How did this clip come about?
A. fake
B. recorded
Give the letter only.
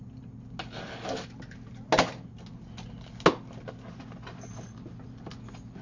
B